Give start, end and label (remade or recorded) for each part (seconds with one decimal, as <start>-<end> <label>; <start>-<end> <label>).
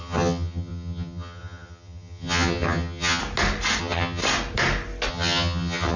0.0-3.2 remade; 3.2-3.8 recorded; 3.8-4.2 remade; 4.2-5.1 recorded; 5.1-6.0 remade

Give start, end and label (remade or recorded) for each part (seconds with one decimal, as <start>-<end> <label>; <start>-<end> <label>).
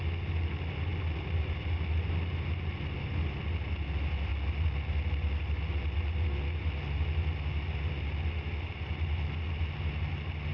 0.0-10.5 recorded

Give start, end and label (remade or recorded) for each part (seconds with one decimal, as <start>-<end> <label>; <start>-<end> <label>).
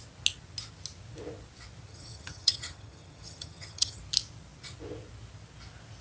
0.0-1.9 recorded; 1.9-4.0 remade; 4.0-6.0 recorded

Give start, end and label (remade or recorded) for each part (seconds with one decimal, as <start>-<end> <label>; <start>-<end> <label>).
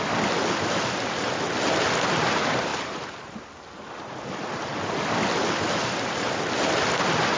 0.0-7.4 recorded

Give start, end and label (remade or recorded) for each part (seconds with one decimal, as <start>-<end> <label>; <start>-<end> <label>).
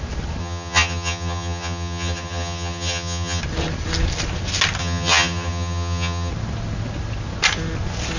0.0-0.4 recorded; 0.4-3.4 remade; 3.4-4.8 recorded; 4.8-6.3 remade; 6.3-8.2 recorded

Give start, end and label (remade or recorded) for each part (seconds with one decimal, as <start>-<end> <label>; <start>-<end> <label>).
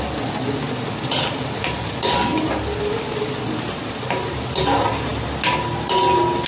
0.0-6.5 recorded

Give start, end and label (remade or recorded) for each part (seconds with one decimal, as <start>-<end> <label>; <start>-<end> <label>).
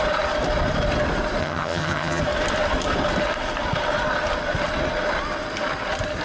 0.0-1.4 recorded; 1.4-2.2 remade; 2.2-6.2 recorded